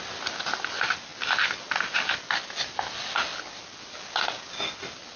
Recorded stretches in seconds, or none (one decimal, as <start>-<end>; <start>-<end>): 0.0-5.2